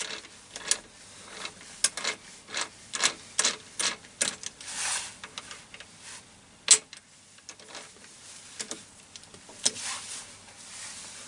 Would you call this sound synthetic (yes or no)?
no